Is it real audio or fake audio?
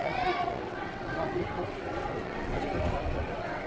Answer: fake